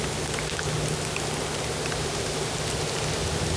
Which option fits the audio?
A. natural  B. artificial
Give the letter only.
A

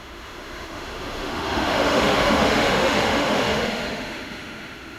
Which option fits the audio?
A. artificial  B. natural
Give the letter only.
A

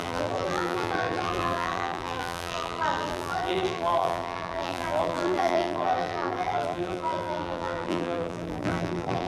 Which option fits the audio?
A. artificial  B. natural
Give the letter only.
A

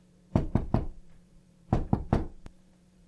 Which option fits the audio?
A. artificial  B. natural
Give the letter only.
A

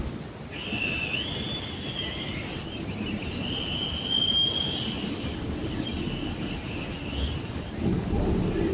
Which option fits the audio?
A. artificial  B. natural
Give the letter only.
B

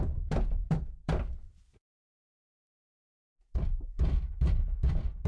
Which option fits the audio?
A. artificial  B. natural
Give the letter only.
A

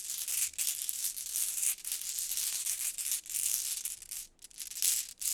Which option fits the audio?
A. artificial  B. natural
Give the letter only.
B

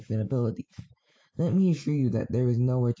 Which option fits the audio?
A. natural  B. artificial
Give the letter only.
B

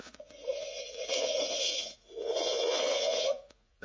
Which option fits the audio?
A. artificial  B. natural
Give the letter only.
A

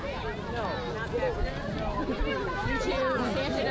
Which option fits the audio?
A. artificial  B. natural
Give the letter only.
B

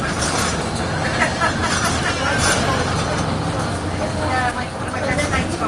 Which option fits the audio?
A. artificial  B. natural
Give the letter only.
B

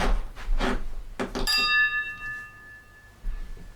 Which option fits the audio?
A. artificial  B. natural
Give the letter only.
B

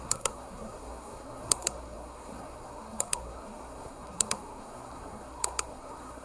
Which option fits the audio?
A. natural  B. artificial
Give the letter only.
B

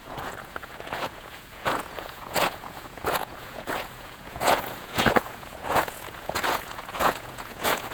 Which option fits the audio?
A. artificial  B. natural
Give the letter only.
A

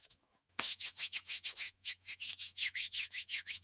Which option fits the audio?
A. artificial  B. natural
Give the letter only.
A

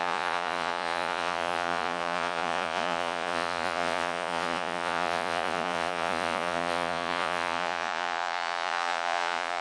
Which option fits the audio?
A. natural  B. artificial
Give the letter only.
B